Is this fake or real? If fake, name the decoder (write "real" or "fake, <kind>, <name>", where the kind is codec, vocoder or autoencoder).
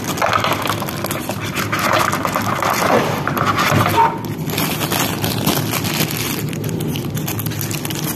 real